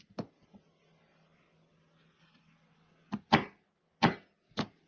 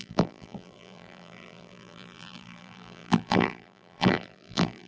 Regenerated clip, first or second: second